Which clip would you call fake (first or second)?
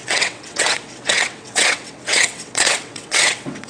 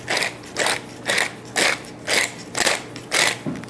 first